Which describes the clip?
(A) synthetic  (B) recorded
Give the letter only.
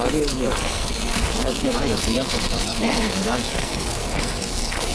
A